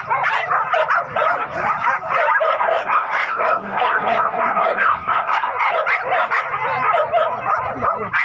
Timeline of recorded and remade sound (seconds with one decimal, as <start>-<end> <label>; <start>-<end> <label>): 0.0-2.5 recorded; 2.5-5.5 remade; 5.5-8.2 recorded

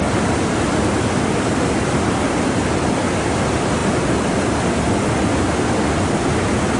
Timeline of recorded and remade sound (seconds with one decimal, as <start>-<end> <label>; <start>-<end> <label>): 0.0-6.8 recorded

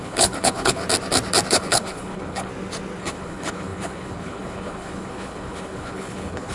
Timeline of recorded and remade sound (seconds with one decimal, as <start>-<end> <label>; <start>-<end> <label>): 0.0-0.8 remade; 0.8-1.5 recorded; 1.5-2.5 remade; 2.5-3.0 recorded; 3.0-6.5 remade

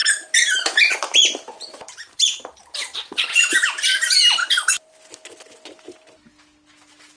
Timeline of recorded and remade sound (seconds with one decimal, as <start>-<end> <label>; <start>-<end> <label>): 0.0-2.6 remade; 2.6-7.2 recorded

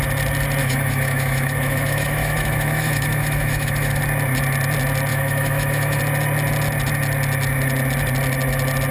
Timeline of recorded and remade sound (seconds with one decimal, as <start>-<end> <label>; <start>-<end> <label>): 0.0-0.6 recorded; 0.6-4.0 remade; 4.0-5.1 recorded; 5.1-6.0 remade; 6.0-8.9 recorded

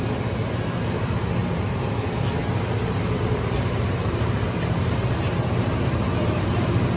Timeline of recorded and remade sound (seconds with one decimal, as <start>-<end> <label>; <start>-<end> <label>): 0.0-1.4 recorded; 1.4-1.9 remade; 1.9-2.4 recorded; 2.4-6.6 remade; 6.6-7.0 recorded

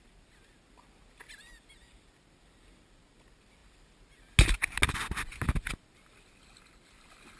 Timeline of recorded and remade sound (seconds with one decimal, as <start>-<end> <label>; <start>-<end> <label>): 0.0-7.4 recorded